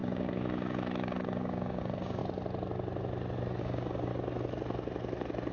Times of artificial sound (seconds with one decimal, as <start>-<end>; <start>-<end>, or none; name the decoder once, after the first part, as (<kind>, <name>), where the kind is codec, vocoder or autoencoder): 0.0-2.2 (codec, DAC); 3.6-4.1